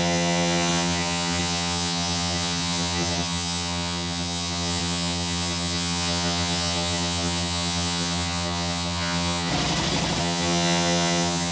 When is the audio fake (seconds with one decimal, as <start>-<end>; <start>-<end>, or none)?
0.0-9.5; 10.2-11.5